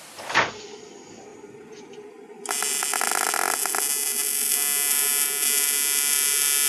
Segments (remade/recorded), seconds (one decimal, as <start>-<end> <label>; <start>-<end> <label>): 0.0-1.3 recorded; 1.3-1.9 remade; 1.9-6.7 recorded